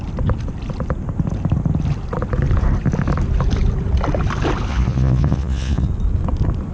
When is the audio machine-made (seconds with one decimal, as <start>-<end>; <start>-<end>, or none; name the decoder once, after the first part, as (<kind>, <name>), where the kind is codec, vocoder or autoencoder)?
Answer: 4.7-5.9 (vocoder, Vocos)